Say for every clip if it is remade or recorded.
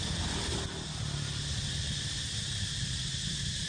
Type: recorded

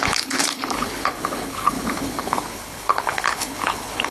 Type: remade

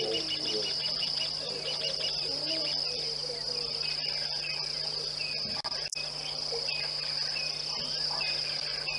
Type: recorded